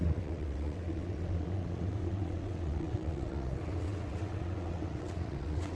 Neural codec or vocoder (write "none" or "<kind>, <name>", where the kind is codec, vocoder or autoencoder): vocoder, WaveNeXt